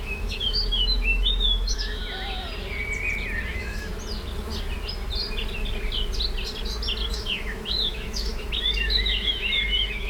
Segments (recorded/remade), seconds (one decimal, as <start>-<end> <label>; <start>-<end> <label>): 0.0-2.0 remade; 2.0-3.5 recorded; 3.5-3.9 remade; 3.9-7.1 recorded; 7.1-10.1 remade